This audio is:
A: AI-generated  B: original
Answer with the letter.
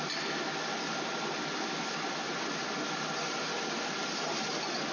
B